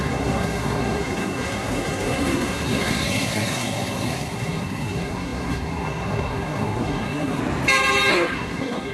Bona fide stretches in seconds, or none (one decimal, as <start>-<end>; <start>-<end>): 7.4-8.1